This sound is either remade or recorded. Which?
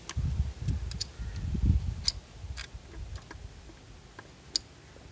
recorded